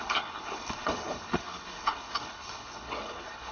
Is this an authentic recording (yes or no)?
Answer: no